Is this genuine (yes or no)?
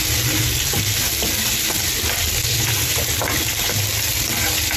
yes